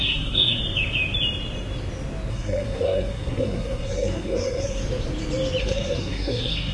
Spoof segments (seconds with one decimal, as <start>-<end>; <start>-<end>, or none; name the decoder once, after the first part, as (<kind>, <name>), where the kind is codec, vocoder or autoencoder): 0.0-0.6 (codec, SNAC); 2.3-4.8; 5.6-6.7